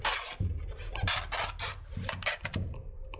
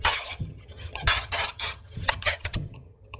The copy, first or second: second